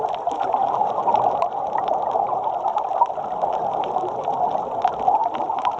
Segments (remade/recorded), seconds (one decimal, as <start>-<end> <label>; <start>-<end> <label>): 0.0-0.6 recorded; 0.6-4.1 remade; 4.1-5.2 recorded; 5.2-5.8 remade